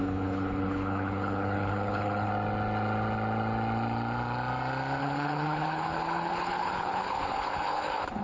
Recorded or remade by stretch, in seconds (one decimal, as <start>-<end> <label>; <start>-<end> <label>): 0.0-2.3 remade; 2.3-5.0 recorded; 5.0-8.2 remade